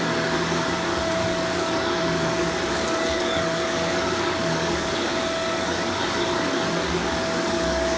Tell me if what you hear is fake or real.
fake